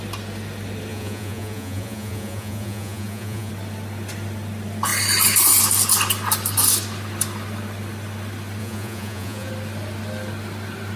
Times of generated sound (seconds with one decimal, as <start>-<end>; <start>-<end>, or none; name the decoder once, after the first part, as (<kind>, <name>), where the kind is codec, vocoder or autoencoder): 0.9-3.5 (vocoder, Vocos); 8.6-9.5